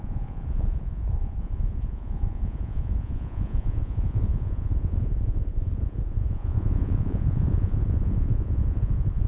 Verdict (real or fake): fake